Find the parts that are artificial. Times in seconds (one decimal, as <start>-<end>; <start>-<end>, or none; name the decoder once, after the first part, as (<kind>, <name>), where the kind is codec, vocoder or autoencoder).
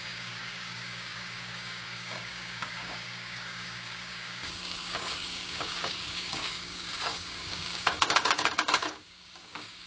0.0-9.9 (codec, DAC)